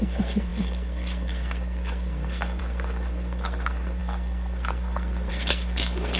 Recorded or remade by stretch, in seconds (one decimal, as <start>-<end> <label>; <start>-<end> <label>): 0.0-6.2 remade